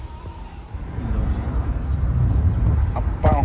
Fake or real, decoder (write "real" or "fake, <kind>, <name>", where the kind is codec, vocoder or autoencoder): fake, vocoder, BigVGAN v2